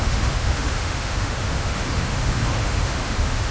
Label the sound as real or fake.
fake